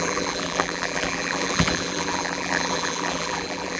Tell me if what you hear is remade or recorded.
remade